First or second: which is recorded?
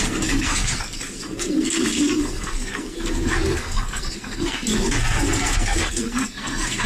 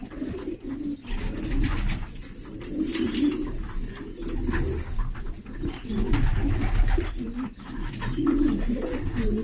second